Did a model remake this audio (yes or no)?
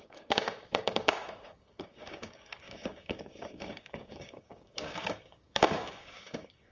yes